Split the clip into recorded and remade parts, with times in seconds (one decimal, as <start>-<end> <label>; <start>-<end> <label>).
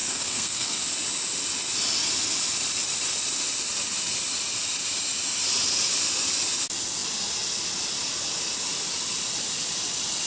0.0-0.8 remade; 0.8-10.3 recorded